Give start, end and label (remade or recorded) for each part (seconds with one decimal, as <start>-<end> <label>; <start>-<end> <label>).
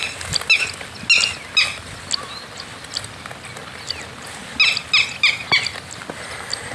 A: 0.0-6.7 recorded